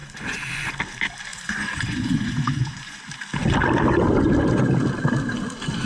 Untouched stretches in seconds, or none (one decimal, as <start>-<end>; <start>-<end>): 0.7-1.3; 3.0-5.9